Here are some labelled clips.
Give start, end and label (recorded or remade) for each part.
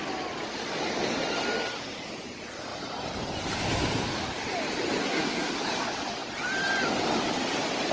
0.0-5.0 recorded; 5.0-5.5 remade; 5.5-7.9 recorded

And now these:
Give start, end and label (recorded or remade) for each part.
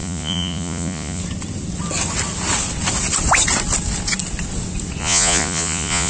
0.0-1.2 remade; 1.2-5.0 recorded; 5.0-6.1 remade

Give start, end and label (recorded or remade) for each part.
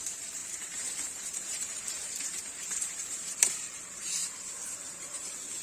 0.0-4.2 remade; 4.2-4.8 recorded; 4.8-5.6 remade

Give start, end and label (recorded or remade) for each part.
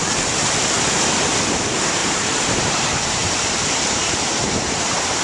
0.0-2.0 recorded; 2.0-5.2 remade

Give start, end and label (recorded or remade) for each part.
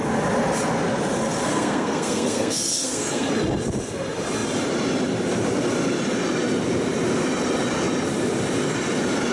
0.0-1.4 recorded; 1.4-3.3 remade; 3.3-9.3 recorded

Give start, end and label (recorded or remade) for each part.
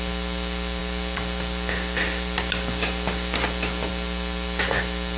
0.0-5.2 recorded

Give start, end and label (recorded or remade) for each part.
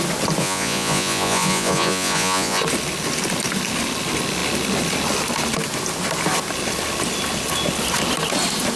0.0-0.4 recorded; 0.4-2.6 remade; 2.6-8.8 recorded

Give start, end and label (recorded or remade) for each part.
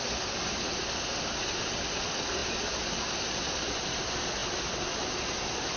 0.0-5.8 recorded